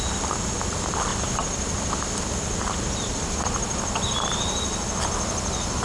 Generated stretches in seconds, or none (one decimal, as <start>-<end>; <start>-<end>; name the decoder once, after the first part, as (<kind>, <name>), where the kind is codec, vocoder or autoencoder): none

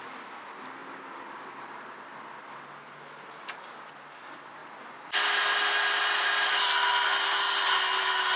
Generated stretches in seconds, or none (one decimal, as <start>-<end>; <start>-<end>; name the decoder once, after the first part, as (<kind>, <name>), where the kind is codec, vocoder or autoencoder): none

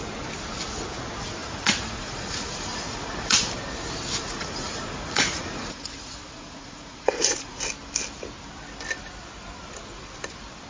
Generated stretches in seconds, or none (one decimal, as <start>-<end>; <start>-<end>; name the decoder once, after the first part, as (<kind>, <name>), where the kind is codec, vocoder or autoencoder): 1.4-3.5 (vocoder, Vocos); 4.2-7.6

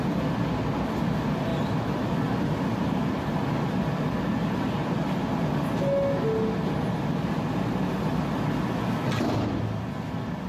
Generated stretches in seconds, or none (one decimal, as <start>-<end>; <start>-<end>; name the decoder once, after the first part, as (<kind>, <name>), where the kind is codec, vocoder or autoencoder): none

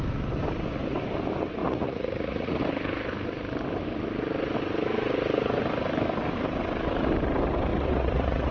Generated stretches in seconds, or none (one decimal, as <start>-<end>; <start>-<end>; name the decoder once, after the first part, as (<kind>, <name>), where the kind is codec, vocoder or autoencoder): 1.6-2.6 (vocoder, Vocos); 7.7-8.5

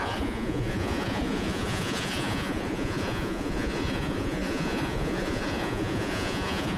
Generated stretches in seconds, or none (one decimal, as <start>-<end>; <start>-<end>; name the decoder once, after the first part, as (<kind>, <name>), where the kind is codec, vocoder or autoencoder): 0.0-6.8 (vocoder, Vocos)